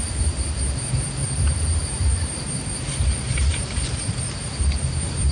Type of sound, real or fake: fake